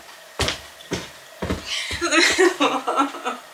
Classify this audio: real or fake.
real